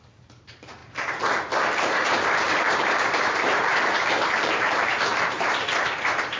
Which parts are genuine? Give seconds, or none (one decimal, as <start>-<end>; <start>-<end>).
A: none